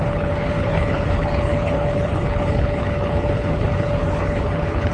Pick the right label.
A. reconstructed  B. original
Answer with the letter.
A